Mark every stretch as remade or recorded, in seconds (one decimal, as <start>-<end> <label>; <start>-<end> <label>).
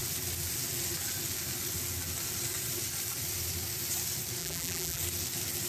0.0-4.4 recorded; 4.4-5.0 remade; 5.0-5.7 recorded